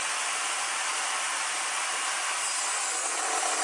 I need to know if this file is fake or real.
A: real